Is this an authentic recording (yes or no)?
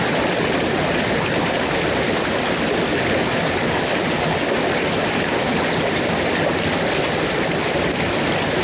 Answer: yes